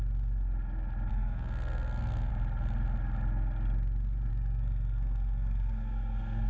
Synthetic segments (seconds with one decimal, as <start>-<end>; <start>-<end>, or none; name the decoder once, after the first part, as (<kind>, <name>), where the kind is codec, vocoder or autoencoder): 1.1-2.3 (codec, SNAC); 4.3-6.5